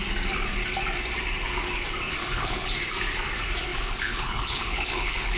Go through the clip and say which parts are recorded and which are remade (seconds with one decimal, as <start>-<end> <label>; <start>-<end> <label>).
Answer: 0.0-2.2 recorded; 2.2-2.7 remade; 2.7-3.7 recorded; 3.7-5.4 remade